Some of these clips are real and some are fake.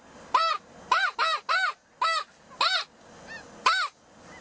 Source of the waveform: real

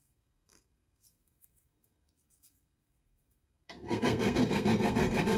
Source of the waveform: fake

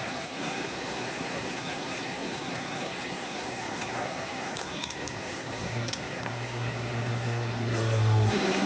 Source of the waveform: fake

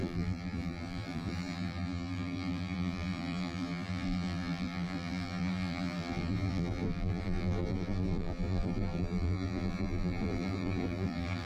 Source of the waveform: fake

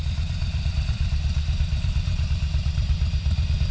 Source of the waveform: fake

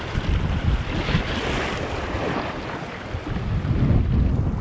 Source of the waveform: real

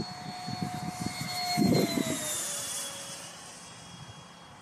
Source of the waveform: real